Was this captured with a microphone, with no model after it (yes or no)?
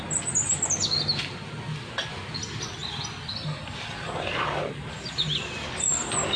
yes